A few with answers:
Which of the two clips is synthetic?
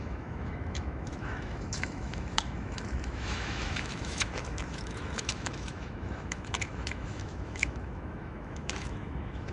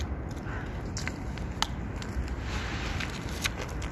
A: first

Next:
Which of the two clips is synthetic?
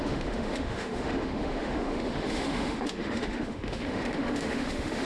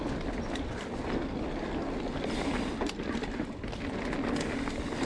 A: first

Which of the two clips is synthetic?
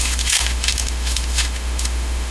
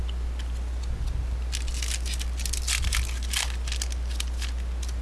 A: first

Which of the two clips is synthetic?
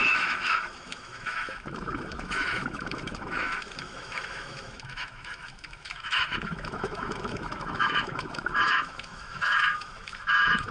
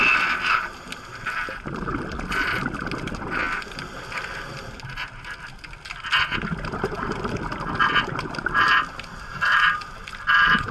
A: first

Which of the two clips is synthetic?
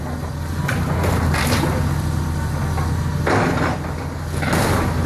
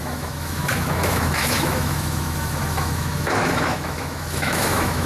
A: second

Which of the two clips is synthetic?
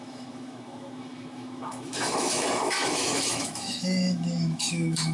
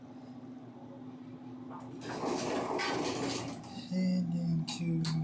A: first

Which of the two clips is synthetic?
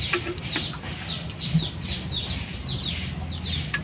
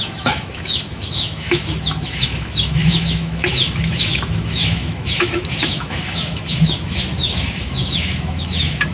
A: second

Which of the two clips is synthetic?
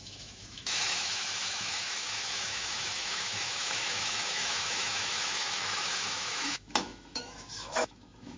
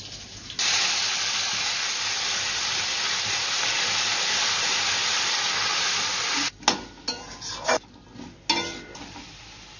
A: first